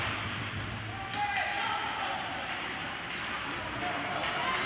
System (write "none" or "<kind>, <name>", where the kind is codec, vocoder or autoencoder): none